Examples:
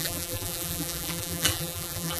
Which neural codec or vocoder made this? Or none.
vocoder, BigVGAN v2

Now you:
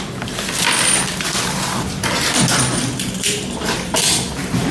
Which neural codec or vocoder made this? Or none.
vocoder, BigVGAN v2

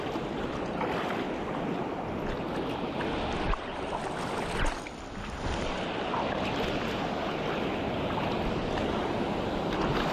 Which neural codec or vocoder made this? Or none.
none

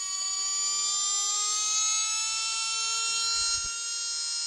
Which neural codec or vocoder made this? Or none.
none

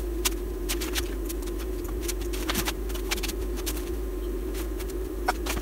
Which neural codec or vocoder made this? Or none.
vocoder, BigVGAN v2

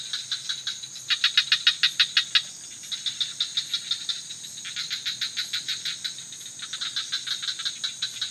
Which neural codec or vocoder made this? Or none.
none